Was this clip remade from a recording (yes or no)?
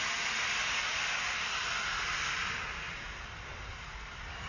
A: no